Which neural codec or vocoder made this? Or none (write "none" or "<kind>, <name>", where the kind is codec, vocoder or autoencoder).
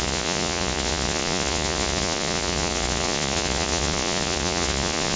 vocoder, Vocos